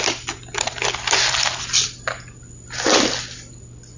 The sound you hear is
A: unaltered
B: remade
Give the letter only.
A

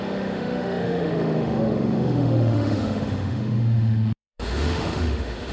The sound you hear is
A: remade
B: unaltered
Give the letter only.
A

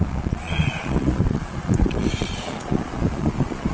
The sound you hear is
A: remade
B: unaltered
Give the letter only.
A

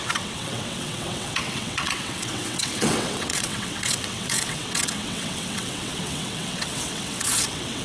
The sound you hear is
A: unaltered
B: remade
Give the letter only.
B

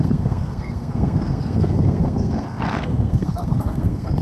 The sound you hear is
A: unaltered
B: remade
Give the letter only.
B